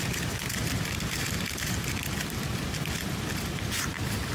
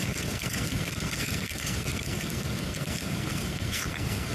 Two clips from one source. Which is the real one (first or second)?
first